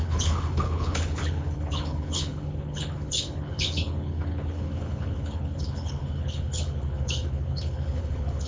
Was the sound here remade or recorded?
remade